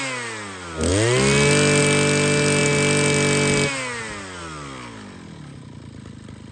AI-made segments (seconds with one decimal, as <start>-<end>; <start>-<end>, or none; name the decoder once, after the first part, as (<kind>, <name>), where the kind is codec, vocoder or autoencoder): none